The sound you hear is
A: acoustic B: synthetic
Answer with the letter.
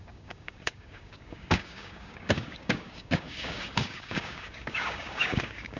B